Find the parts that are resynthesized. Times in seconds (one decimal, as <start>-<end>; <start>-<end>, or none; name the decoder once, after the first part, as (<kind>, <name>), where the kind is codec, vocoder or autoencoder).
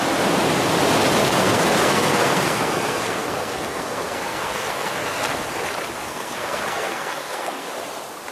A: 1.2-5.6 (codec, SNAC); 6.0-7.7